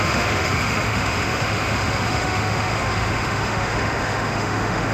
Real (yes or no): no